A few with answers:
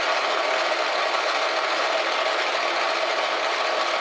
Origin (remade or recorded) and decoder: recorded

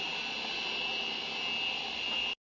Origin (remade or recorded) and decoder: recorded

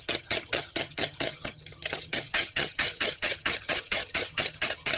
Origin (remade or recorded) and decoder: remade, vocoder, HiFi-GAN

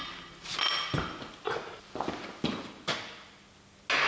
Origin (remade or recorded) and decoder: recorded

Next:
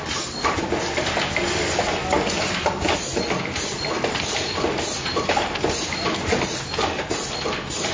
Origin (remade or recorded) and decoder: recorded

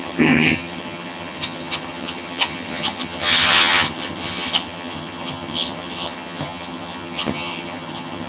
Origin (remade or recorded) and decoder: remade, vocoder, HiFi-GAN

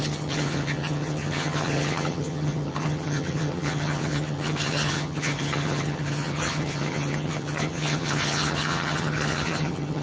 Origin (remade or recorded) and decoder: remade, vocoder, HiFi-GAN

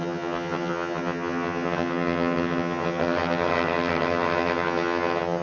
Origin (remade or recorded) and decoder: remade, vocoder, HiFi-GAN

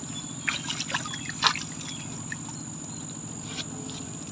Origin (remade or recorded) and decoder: recorded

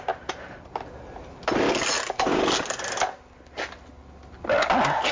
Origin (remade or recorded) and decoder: recorded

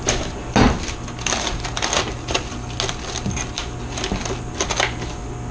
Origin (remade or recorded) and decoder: recorded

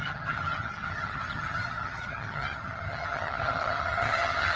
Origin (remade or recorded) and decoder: remade, vocoder, HiFi-GAN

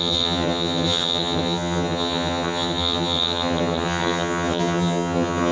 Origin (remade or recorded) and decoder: remade, vocoder, HiFi-GAN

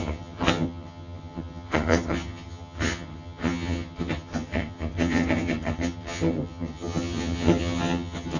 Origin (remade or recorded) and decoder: remade, vocoder, HiFi-GAN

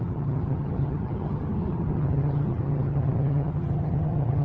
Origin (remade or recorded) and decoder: remade, vocoder, HiFi-GAN